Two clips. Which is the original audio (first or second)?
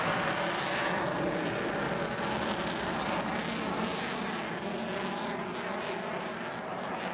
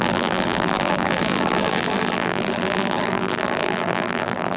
first